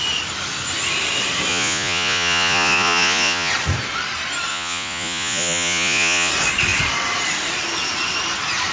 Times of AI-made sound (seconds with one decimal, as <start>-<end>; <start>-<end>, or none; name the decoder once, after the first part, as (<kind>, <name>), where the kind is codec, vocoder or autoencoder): 1.5-3.5 (vocoder, Vocos); 4.5-6.3